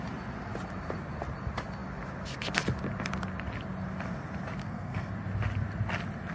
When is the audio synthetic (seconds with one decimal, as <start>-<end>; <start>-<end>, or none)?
4.6-5.1